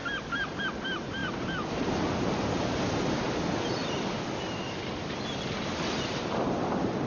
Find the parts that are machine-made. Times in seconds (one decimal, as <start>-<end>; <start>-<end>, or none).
0.0-0.6; 3.8-5.2

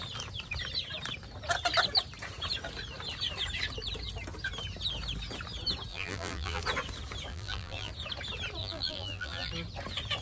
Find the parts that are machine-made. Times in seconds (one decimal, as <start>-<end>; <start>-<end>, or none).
5.9-6.6; 7.3-7.9; 8.6-9.5

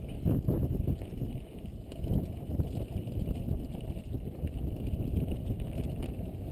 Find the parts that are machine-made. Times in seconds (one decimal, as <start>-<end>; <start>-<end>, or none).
1.7-4.0

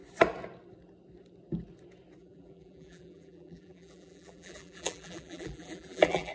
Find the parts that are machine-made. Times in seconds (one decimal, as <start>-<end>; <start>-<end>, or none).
2.2-6.3

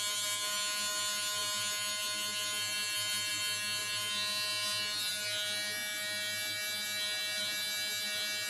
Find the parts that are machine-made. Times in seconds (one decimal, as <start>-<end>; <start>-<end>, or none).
none

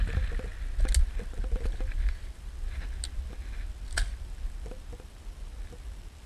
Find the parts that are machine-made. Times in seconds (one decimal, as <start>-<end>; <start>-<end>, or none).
none